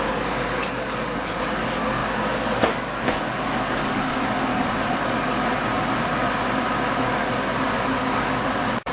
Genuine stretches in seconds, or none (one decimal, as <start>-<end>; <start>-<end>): 4.5-7.8